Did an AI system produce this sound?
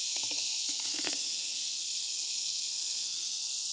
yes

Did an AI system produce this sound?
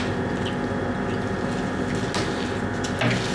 no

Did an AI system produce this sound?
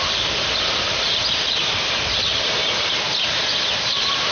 yes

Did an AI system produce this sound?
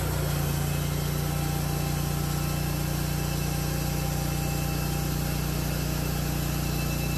no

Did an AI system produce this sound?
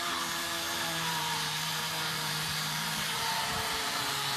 yes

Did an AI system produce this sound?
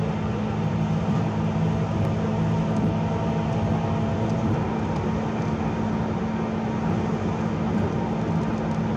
no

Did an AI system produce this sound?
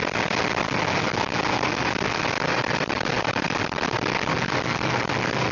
no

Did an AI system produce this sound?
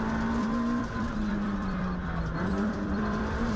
yes